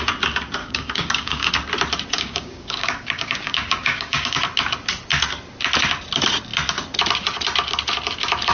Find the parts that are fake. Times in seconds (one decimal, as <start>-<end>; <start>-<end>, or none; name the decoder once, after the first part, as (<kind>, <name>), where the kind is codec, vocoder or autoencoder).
0.6-1.5 (codec, DAC); 2.1-4.4